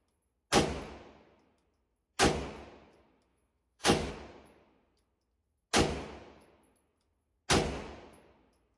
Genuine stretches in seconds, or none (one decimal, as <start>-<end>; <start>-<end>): 0.0-3.3; 4.1-8.8